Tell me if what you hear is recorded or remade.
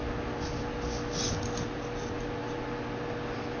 recorded